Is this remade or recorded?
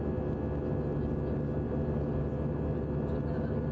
recorded